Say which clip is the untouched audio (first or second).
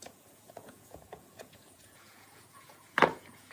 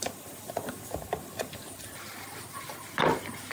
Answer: second